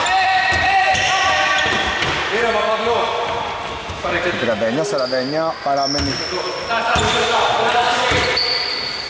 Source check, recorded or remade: recorded